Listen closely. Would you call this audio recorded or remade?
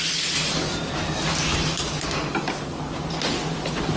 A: recorded